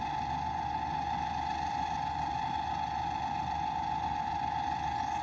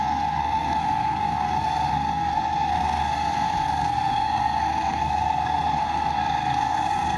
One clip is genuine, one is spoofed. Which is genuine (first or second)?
first